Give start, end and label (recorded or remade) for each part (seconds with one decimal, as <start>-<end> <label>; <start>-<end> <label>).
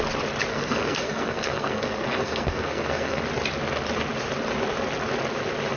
0.0-0.5 recorded; 0.5-3.2 remade; 3.2-5.8 recorded